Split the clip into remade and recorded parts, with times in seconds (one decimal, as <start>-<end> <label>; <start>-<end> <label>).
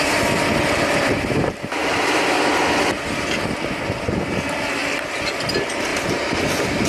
0.0-1.8 recorded; 1.8-2.6 remade; 2.6-5.9 recorded; 5.9-6.4 remade; 6.4-6.9 recorded